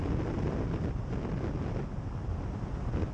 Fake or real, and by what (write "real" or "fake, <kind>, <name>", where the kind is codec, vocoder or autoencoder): real